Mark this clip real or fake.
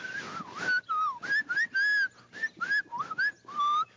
real